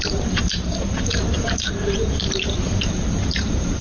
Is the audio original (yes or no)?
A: no